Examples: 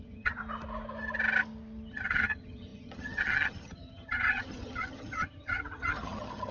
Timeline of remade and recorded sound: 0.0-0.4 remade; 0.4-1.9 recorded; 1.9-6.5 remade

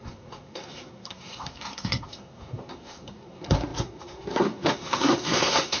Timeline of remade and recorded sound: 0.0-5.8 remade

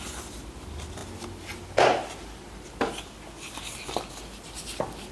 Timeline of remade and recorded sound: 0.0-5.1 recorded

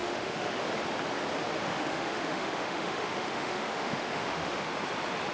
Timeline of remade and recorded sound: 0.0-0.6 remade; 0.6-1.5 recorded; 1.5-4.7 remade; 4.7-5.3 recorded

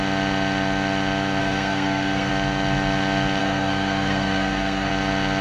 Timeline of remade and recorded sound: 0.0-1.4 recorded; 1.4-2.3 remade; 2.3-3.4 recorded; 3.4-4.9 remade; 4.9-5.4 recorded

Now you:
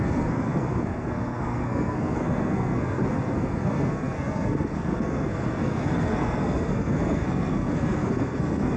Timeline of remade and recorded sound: 0.0-8.8 remade

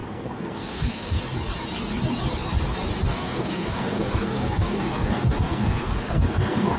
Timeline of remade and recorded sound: 0.0-1.2 remade; 1.2-3.1 recorded; 3.1-6.8 remade

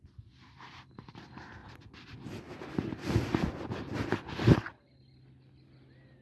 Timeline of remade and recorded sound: 0.0-6.2 remade